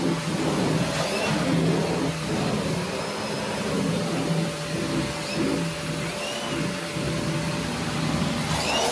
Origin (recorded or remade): recorded